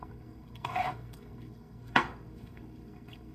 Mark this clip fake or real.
fake